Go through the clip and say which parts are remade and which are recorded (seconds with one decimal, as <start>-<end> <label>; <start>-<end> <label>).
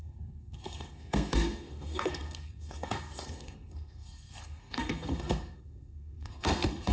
0.0-6.9 remade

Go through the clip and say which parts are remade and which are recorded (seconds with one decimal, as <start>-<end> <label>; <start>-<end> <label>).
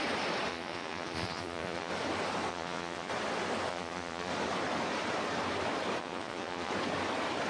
0.0-0.5 recorded; 0.5-1.9 remade; 1.9-2.5 recorded; 2.5-3.1 remade; 3.1-3.7 recorded; 3.7-4.3 remade; 4.3-6.0 recorded; 6.0-6.7 remade; 6.7-7.5 recorded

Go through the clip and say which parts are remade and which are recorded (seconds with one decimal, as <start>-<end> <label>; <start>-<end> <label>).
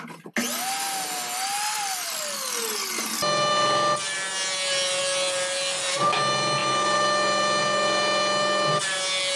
0.0-9.4 recorded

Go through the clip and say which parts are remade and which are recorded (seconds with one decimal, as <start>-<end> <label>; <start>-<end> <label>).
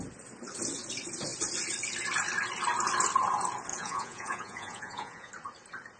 0.0-3.7 recorded; 3.7-5.3 remade; 5.3-6.0 recorded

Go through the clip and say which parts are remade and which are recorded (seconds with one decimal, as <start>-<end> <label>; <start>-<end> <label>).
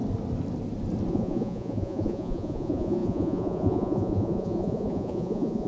0.0-1.1 recorded; 1.1-5.7 remade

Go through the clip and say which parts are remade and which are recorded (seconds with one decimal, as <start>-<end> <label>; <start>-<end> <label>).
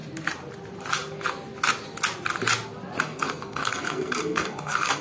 0.0-3.0 recorded; 3.0-5.0 remade